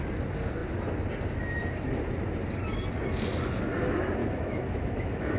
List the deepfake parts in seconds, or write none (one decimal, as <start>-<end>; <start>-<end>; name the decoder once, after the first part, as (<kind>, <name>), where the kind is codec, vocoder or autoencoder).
4.2-5.4 (autoencoder, DAC-VAE)